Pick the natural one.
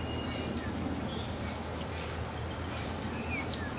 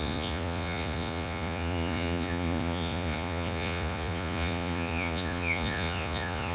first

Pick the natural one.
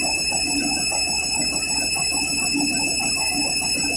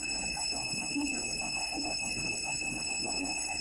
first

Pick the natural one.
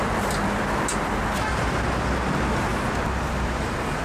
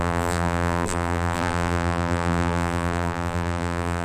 first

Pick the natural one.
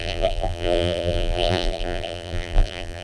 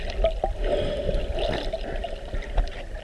second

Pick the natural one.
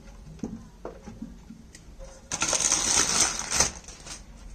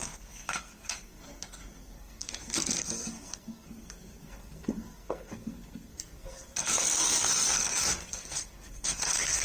first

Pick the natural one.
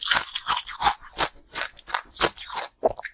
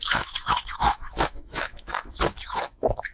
first